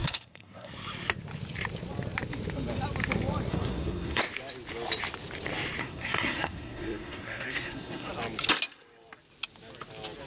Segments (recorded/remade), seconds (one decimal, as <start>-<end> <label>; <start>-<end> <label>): 0.0-0.7 remade; 0.7-3.5 recorded; 3.5-4.2 remade; 4.2-5.8 recorded; 5.8-8.1 remade; 8.1-10.3 recorded